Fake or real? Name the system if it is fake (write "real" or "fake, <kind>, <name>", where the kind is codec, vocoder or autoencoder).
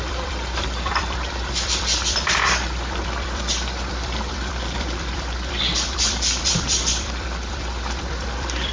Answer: fake, vocoder, BigVGAN v2